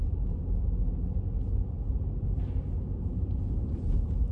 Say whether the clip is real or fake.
real